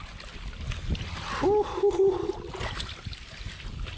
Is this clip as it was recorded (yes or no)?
yes